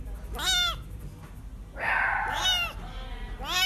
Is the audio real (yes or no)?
yes